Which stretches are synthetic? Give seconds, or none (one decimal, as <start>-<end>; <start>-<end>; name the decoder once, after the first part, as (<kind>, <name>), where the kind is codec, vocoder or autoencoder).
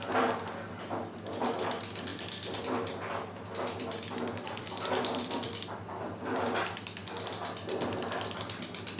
none